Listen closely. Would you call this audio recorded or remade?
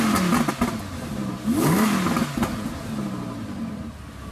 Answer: recorded